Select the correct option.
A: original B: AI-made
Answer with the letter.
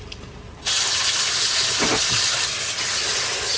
A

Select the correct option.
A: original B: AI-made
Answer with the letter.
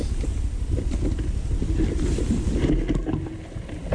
A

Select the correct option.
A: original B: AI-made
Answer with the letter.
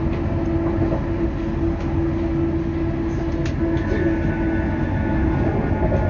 A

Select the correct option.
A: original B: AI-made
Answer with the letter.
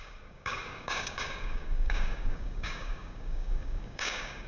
B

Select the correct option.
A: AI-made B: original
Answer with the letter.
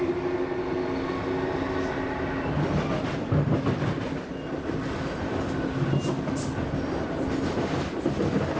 B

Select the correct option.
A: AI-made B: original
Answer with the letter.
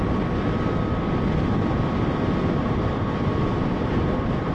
B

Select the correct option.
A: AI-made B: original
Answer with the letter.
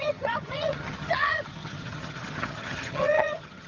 A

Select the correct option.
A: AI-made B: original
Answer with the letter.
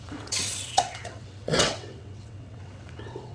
A